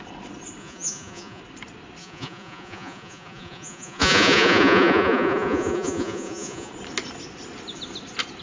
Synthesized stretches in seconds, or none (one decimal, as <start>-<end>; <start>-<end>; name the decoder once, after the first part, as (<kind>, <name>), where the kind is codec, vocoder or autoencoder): 0.6-1.4 (vocoder, Vocos); 2.0-6.7